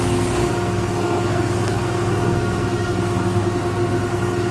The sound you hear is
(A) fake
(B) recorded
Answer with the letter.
A